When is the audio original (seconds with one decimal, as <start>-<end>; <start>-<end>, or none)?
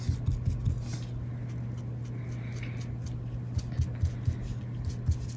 0.0-5.4